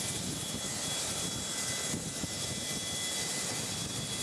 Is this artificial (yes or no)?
no